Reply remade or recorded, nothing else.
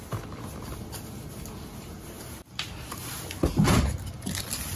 recorded